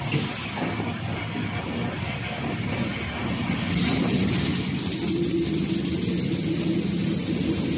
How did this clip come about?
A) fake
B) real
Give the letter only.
B